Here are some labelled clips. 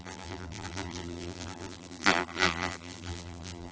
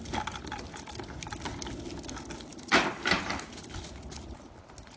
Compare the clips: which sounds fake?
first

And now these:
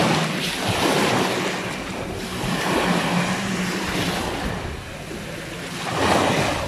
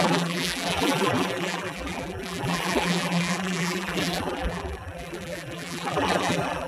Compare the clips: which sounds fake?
second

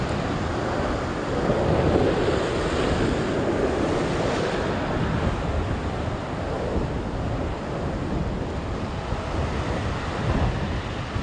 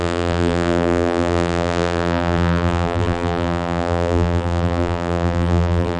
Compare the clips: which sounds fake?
second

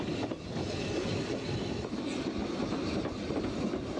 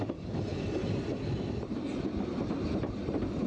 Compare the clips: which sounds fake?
first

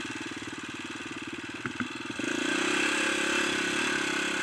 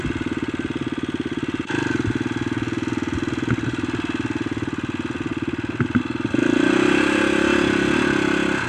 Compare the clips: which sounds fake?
first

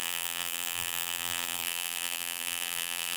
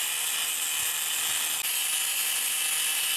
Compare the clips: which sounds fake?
first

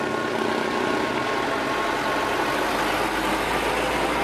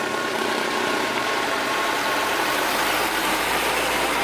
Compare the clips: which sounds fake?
second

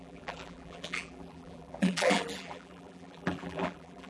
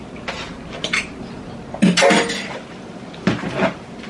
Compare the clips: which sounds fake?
first